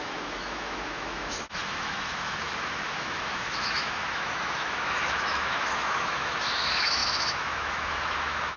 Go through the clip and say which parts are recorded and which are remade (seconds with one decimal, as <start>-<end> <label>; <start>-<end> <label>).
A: 0.0-8.6 remade